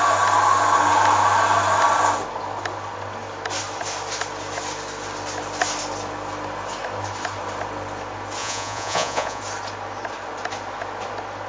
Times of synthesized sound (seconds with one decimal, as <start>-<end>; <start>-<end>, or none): 8.4-9.4